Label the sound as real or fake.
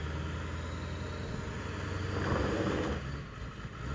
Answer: real